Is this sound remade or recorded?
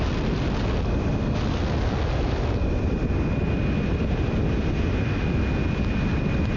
recorded